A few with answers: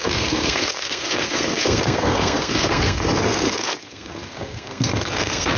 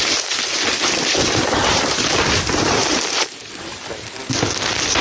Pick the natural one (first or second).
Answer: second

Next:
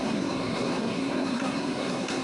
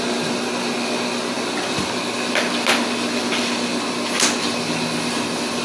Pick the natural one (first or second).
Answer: second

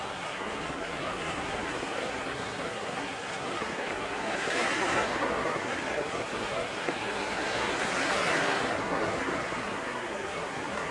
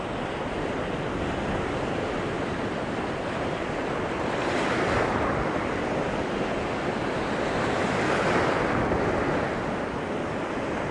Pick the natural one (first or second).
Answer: second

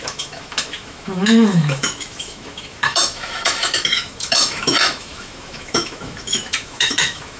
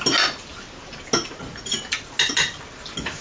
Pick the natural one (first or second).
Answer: second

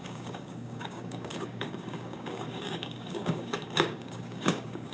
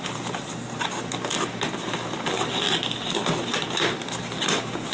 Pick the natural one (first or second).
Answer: second